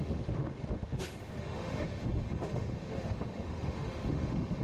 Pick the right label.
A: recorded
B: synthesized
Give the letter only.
B